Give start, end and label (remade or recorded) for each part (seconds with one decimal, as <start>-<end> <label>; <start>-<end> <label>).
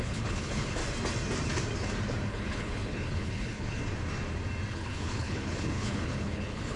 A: 0.0-0.8 remade; 0.8-2.3 recorded; 2.3-3.8 remade; 3.8-4.7 recorded; 4.7-6.8 remade